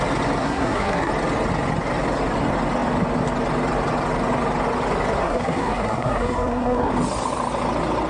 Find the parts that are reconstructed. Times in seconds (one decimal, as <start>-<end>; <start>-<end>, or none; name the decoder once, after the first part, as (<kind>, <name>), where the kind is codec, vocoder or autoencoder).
0.4-1.1 (codec, SNAC); 5.2-6.9